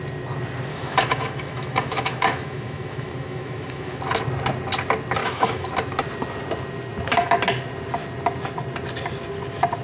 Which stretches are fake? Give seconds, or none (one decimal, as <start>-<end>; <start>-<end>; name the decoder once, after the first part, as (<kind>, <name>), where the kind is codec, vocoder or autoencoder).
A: 0.7-4.0 (autoencoder, DAC-VAE); 5.2-5.7